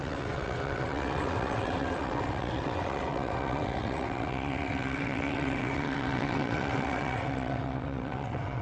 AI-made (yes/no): yes